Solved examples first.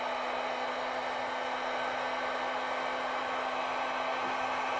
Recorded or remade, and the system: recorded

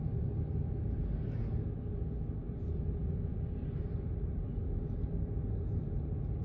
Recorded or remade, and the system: recorded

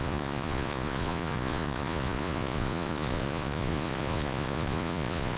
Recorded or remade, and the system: remade, vocoder, Vocos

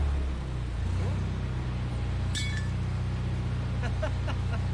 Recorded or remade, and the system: recorded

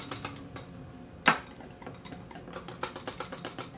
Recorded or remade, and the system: recorded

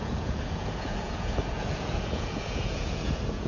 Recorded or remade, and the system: remade, vocoder, Vocos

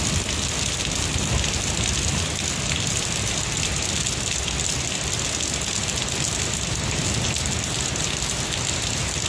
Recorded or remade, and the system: recorded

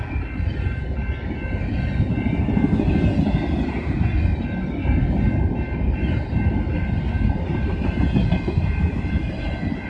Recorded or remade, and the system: recorded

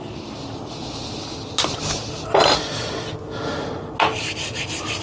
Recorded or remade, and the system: recorded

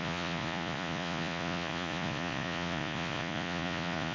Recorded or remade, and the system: remade, vocoder, Vocos